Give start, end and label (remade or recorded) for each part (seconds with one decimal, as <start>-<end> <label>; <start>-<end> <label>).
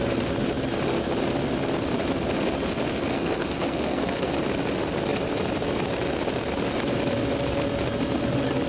0.0-3.1 recorded; 3.1-4.3 remade; 4.3-8.7 recorded